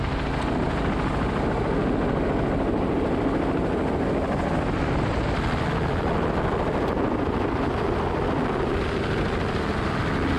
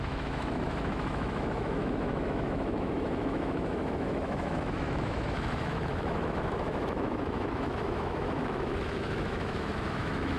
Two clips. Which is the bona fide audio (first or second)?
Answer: first